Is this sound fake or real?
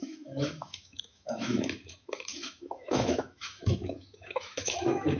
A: fake